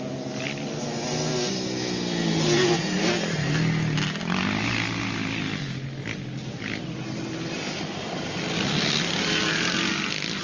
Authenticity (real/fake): real